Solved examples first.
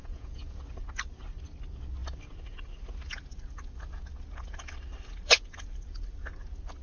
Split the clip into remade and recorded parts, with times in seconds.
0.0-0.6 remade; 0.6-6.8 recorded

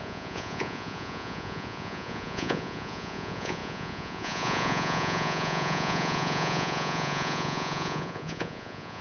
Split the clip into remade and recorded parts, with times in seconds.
0.0-9.0 remade

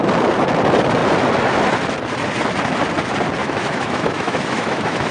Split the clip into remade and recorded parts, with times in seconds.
0.0-3.4 recorded; 3.4-5.1 remade

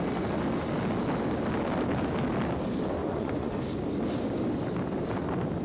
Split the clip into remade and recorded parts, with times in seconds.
0.0-3.0 recorded; 3.0-3.6 remade; 3.6-5.6 recorded

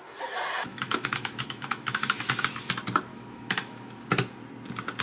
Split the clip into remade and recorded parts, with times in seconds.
0.0-0.7 recorded; 0.7-2.2 remade; 2.2-3.1 recorded; 3.1-4.0 remade; 4.0-5.0 recorded